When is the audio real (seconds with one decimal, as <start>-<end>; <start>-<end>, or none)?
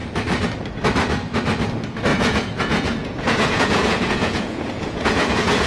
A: 0.0-2.1